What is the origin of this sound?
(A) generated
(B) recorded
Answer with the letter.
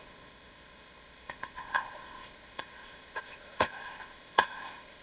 A